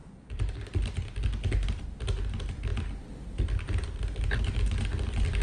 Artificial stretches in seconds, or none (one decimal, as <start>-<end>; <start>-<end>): 0.0-0.6